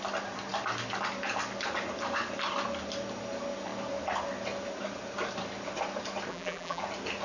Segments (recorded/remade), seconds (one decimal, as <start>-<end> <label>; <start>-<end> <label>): 0.0-6.3 recorded; 6.3-6.8 remade; 6.8-7.2 recorded